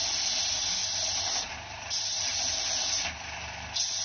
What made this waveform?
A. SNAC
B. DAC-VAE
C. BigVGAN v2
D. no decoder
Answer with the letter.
D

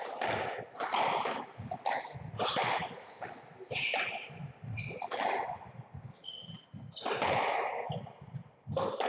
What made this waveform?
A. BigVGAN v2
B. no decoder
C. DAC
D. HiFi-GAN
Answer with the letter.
B